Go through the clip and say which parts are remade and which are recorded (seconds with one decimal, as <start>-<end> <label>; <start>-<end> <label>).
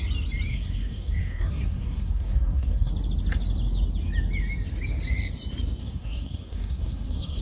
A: 0.0-0.5 recorded; 0.5-2.9 remade; 2.9-5.8 recorded; 5.8-7.4 remade